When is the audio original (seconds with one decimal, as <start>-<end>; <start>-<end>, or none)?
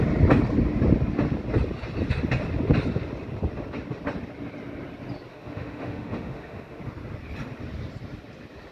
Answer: 0.0-5.3; 6.8-8.7